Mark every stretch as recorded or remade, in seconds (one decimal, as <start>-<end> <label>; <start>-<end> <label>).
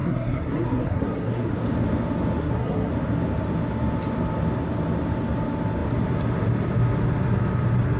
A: 0.0-1.5 remade; 1.5-2.4 recorded; 2.4-2.9 remade; 2.9-8.0 recorded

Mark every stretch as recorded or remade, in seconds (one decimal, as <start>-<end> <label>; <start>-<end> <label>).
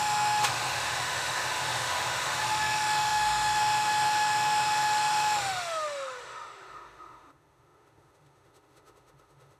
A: 0.0-9.6 remade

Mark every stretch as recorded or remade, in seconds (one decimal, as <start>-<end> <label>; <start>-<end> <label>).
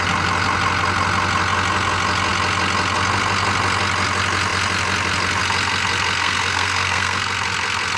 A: 0.0-6.2 recorded; 6.2-7.3 remade; 7.3-8.0 recorded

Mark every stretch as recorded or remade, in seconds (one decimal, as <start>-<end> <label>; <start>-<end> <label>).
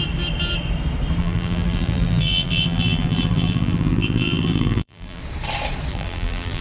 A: 0.0-1.2 recorded; 1.2-5.2 remade; 5.2-5.9 recorded; 5.9-6.6 remade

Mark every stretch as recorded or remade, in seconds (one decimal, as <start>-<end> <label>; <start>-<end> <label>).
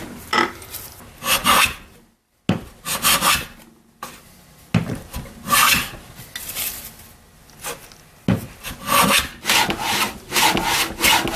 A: 0.0-1.4 recorded; 1.4-1.9 remade; 1.9-11.4 recorded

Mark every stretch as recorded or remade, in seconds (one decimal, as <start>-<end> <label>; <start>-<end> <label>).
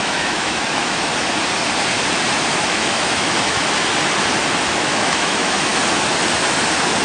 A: 0.0-1.1 remade; 1.1-2.7 recorded; 2.7-3.6 remade; 3.6-4.6 recorded; 4.6-5.7 remade; 5.7-7.0 recorded